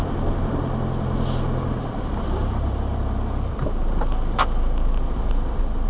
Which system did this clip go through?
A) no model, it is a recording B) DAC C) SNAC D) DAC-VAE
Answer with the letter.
A